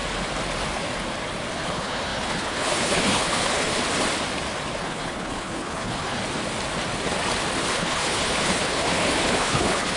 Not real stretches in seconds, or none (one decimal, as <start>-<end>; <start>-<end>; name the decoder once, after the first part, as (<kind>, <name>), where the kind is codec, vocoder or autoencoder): 1.5-3.8 (codec, HILCodec); 4.8-6.2; 7.7-10.0